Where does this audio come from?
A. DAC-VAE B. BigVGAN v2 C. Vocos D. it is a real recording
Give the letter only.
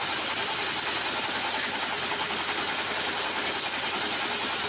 D